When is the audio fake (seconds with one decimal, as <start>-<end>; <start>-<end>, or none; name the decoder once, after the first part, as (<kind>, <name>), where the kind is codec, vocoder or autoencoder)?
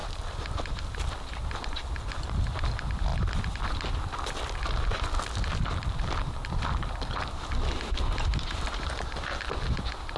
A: 0.0-1.1 (vocoder, BigVGAN v2); 3.1-7.5